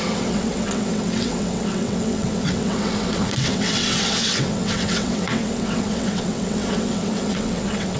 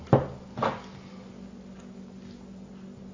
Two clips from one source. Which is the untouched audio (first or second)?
second